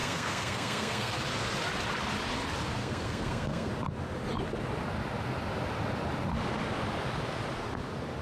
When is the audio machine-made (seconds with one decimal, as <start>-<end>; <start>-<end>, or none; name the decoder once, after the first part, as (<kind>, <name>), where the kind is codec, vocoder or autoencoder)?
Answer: 0.0-1.1 (codec, SNAC); 2.8-3.7